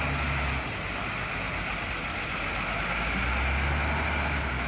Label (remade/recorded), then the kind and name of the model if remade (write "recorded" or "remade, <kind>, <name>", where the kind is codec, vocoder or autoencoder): recorded